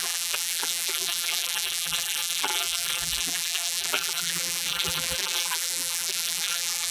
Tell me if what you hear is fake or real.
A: fake